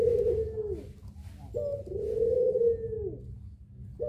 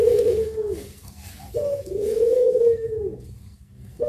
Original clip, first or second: first